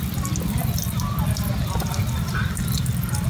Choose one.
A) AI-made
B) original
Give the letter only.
B